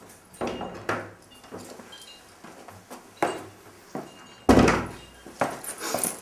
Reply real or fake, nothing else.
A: real